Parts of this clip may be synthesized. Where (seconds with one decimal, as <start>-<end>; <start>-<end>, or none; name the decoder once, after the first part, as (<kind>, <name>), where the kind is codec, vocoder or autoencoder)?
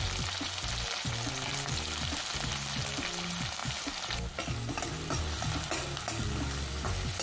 3.6-4.2 (vocoder, BigVGAN v2)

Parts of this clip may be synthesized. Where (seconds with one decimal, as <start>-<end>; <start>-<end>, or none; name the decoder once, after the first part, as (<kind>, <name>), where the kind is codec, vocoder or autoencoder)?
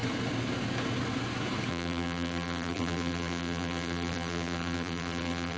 1.7-5.6 (vocoder, BigVGAN v2)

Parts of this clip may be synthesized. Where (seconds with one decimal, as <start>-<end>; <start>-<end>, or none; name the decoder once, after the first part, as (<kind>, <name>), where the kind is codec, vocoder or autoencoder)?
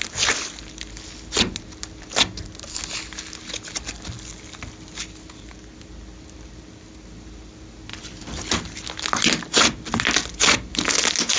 7.9-8.5 (vocoder, BigVGAN v2)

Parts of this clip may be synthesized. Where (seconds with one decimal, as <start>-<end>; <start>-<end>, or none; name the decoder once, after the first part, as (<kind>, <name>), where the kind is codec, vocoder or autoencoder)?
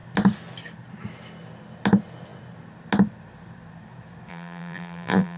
4.3-5.4 (vocoder, BigVGAN v2)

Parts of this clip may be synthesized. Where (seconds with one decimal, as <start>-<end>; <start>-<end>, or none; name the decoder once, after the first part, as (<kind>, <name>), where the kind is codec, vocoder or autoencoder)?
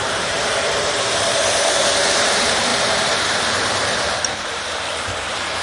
0.0-5.6 (vocoder, BigVGAN v2)